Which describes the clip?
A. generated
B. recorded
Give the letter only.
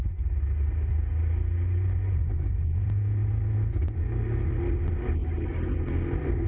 B